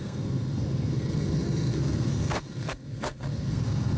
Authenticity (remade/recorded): remade